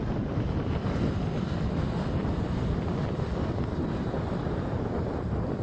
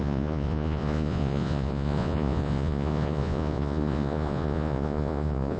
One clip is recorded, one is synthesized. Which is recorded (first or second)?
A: first